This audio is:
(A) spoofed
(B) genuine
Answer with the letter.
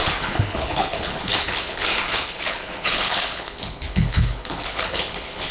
A